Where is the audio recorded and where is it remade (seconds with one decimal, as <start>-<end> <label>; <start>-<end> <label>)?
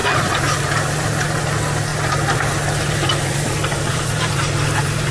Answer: 0.0-1.4 remade; 1.4-1.9 recorded; 1.9-5.1 remade